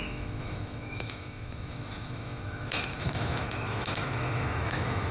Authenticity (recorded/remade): remade